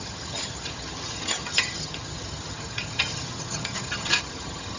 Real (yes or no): no